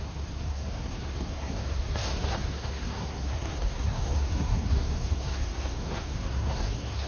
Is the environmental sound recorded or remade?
remade